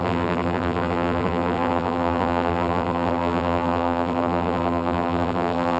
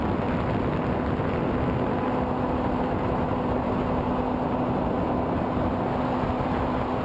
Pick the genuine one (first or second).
second